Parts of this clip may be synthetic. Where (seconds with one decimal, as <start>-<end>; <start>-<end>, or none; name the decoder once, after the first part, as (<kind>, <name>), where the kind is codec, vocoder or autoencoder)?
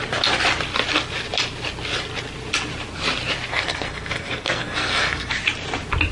3.5-5.3 (codec, SNAC)